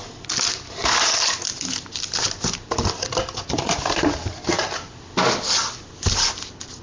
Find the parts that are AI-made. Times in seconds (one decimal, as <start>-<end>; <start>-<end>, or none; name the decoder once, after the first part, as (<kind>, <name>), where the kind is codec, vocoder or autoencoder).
none